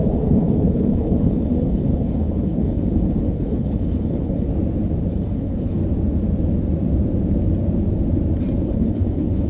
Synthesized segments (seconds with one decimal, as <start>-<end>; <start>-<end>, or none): 0.0-4.5; 5.1-5.8; 8.6-9.5